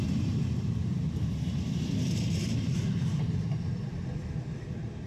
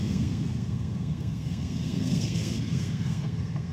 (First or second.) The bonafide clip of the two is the first